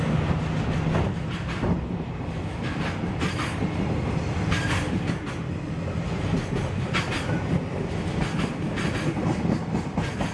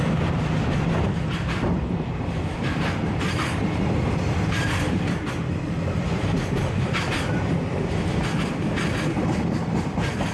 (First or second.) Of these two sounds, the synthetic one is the second